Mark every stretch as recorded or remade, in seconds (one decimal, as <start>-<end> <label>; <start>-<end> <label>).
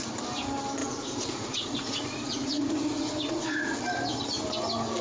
0.0-0.8 recorded; 0.8-3.8 remade; 3.8-5.0 recorded